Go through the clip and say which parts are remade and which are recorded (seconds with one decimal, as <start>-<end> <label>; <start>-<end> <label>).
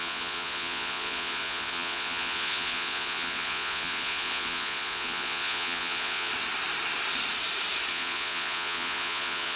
0.0-6.3 remade; 6.3-7.9 recorded; 7.9-9.6 remade